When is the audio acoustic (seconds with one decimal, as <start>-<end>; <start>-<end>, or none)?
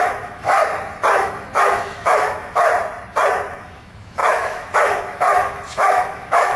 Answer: 0.6-1.2; 2.7-3.5